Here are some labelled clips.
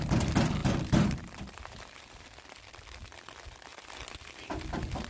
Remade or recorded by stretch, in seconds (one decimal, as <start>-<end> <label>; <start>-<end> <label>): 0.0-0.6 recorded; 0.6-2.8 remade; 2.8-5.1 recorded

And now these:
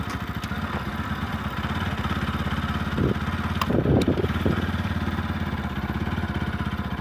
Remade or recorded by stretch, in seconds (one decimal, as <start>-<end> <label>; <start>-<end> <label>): 0.0-3.7 recorded; 3.7-6.1 remade; 6.1-7.0 recorded

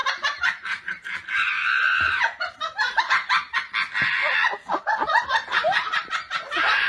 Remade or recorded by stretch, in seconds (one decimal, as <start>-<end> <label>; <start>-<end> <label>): 0.0-3.0 remade; 3.0-5.5 recorded; 5.5-6.1 remade; 6.1-6.9 recorded